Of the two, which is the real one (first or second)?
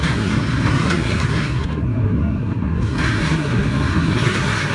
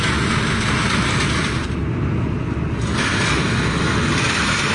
second